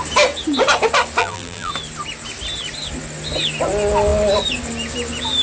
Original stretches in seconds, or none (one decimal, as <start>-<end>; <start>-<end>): 0.0-1.2; 1.7-5.4